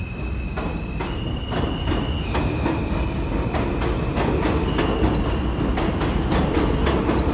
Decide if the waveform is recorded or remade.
recorded